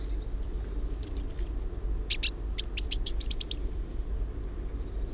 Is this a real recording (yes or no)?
yes